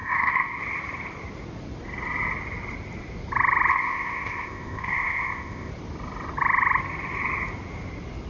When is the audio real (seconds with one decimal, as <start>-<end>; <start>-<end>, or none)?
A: 0.6-3.7; 5.7-8.3